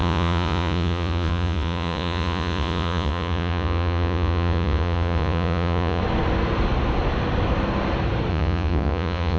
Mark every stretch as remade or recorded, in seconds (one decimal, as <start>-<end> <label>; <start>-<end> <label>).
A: 0.0-6.0 remade; 6.0-8.3 recorded; 8.3-9.4 remade